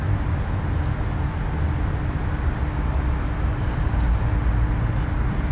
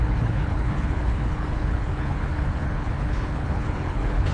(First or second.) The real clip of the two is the first